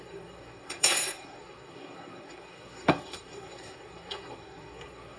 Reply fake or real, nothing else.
fake